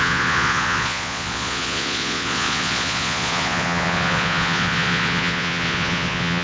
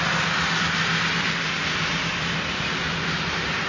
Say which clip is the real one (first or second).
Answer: second